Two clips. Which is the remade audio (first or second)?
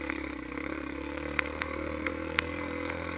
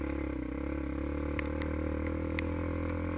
first